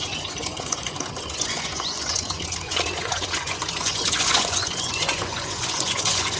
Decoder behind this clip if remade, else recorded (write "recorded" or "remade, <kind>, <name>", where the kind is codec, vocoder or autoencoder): remade, vocoder, Vocos